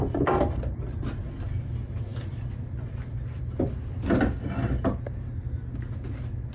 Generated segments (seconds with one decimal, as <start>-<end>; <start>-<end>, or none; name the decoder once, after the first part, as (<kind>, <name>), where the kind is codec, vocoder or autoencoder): none